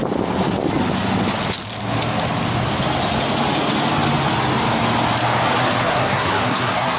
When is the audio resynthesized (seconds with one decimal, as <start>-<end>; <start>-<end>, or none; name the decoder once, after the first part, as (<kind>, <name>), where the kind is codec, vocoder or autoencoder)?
5.9-7.0 (codec, SNAC)